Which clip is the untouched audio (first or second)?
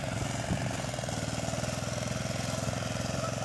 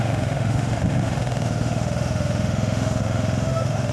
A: first